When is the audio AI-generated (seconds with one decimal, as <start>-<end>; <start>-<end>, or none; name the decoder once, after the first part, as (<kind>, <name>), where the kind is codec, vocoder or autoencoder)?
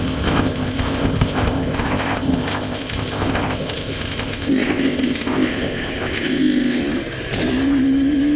0.0-6.8 (codec, ZipCodec)